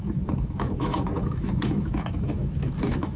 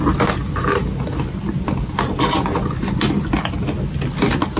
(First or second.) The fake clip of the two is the first